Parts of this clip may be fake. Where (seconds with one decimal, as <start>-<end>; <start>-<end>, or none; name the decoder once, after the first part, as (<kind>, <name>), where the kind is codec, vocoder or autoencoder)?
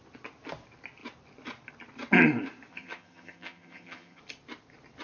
2.7-4.2 (vocoder, HiFi-GAN)